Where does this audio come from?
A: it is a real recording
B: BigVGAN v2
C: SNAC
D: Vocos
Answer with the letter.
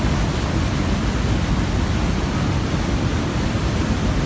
A